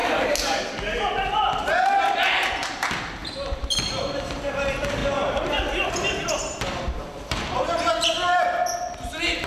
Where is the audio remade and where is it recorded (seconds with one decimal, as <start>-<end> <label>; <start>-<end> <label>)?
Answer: 0.0-9.5 recorded